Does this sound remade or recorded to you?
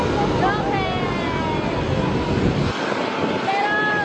recorded